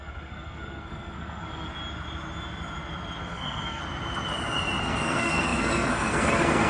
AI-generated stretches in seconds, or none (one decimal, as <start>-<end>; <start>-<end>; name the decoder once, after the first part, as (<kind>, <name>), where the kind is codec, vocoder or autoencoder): 0.0-1.7 (codec, SNAC); 3.2-3.8; 4.8-6.7